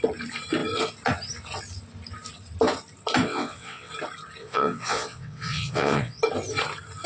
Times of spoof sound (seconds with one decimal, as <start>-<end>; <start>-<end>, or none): 3.2-3.9; 4.4-6.2